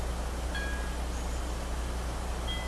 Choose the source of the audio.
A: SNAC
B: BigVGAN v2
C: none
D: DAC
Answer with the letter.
C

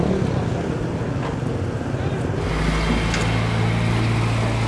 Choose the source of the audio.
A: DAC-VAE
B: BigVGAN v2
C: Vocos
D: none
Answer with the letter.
D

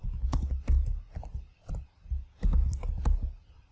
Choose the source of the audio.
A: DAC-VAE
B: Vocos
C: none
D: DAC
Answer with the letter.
C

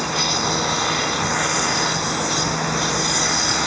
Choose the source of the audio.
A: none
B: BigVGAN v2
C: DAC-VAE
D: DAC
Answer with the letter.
A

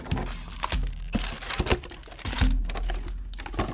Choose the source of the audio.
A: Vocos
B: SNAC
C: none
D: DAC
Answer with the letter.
C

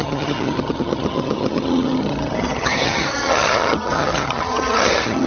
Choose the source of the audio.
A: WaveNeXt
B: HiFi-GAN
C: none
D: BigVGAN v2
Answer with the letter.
B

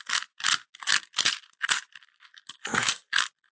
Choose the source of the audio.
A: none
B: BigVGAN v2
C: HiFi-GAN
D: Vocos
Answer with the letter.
A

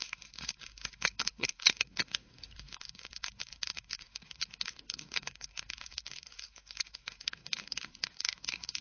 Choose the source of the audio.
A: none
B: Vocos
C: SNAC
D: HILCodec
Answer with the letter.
C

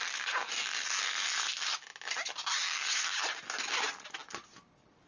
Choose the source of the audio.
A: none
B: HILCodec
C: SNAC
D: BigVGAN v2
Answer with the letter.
A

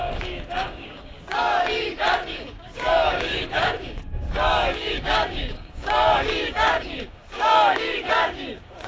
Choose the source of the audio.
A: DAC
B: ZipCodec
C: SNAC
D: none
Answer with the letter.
A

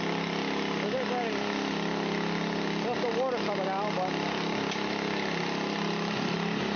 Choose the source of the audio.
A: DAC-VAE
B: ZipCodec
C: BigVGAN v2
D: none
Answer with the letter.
D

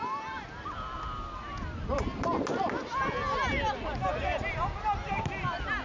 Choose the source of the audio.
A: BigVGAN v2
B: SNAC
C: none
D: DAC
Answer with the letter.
C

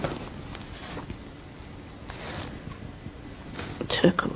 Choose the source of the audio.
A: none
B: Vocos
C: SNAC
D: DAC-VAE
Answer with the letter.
A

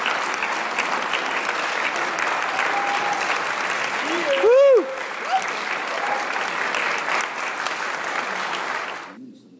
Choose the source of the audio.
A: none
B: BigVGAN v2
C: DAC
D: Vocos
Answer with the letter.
A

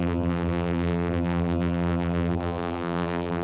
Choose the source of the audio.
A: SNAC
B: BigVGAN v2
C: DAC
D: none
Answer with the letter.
B